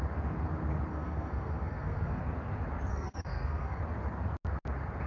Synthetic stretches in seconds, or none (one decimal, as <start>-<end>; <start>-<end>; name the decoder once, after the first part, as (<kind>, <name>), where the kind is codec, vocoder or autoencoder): 0.9-2.2 (codec, SNAC); 2.9-3.8